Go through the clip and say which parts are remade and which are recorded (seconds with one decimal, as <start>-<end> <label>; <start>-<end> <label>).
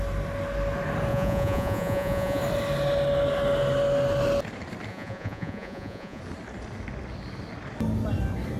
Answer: 0.0-1.1 recorded; 1.1-2.4 remade; 2.4-4.9 recorded; 4.9-6.2 remade; 6.2-8.6 recorded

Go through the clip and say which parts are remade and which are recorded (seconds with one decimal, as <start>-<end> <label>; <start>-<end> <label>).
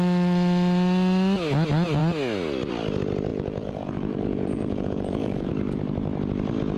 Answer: 0.0-3.3 recorded; 3.3-5.5 remade; 5.5-6.8 recorded